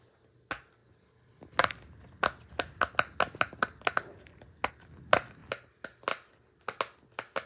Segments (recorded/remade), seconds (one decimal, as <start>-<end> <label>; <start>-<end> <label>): 0.0-7.5 recorded